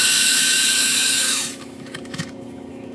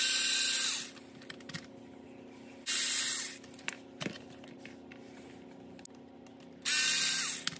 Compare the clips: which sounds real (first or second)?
second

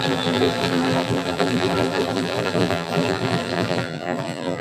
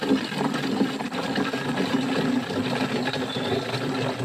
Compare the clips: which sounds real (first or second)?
second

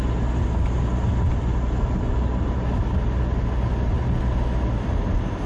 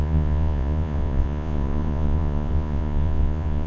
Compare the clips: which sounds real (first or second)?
first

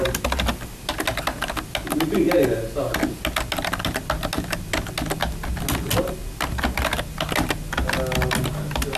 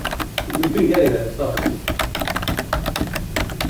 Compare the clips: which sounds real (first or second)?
first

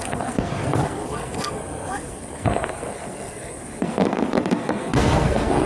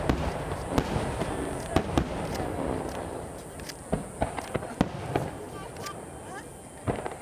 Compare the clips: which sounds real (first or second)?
second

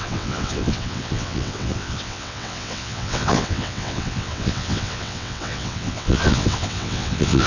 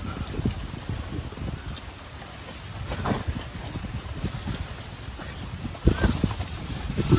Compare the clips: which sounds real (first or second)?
second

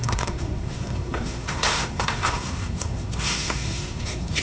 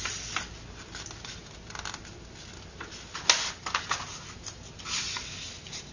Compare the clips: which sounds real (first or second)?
second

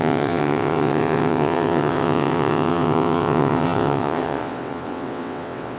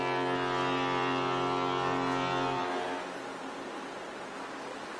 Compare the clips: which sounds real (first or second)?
second